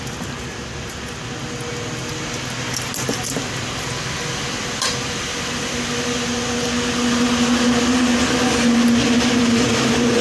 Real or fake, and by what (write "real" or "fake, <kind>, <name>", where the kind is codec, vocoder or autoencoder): real